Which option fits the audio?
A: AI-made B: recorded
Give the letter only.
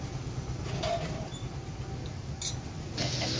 B